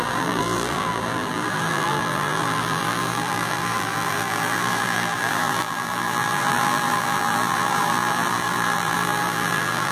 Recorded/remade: remade